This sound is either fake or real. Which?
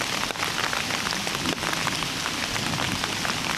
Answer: real